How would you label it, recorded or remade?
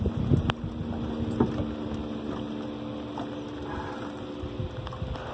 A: recorded